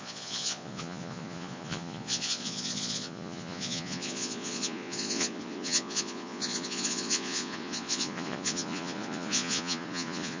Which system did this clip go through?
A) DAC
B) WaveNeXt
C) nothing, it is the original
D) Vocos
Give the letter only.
D